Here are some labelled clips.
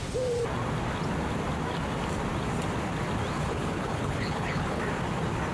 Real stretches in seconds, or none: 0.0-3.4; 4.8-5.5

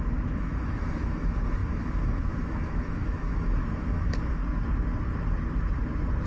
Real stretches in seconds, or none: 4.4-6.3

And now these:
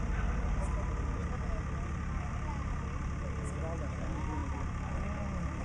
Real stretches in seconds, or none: 0.0-5.6